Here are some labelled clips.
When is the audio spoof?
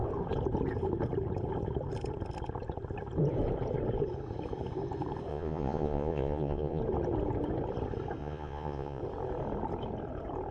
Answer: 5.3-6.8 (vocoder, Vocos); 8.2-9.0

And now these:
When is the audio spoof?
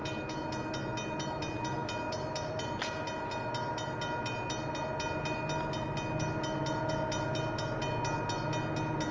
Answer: none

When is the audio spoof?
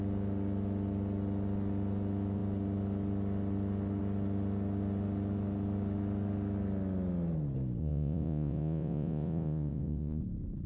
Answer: 7.8-10.2 (vocoder, Vocos)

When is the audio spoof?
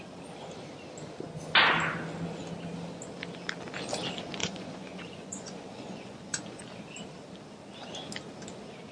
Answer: 4.4-6.6 (vocoder, Vocos)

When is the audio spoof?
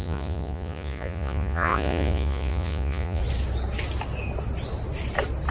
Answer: 0.0-3.2 (vocoder, Vocos)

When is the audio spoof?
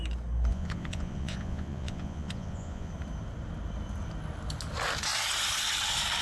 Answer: 0.5-2.9 (vocoder, Vocos)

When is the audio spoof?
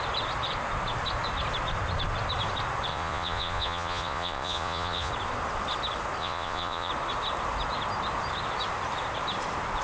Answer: 2.9-5.1 (vocoder, Vocos); 6.2-6.9